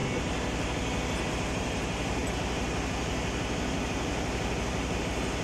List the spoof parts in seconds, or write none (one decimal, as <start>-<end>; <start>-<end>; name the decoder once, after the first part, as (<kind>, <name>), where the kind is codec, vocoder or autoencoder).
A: 1.3-2.2 (vocoder, BigVGAN v2); 5.0-5.4